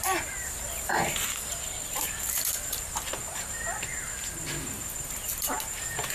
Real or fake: fake